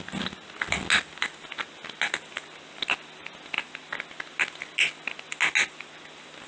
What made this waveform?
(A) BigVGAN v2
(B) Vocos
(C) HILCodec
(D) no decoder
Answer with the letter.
D